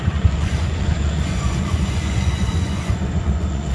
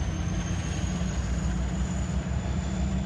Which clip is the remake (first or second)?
first